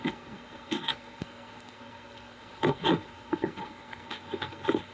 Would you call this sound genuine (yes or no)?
no